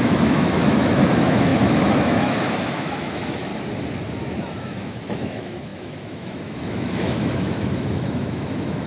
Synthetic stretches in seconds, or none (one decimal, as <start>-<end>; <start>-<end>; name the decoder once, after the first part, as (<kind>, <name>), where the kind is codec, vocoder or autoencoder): 0.0-3.5 (autoencoder, DAC-VAE); 4.4-8.9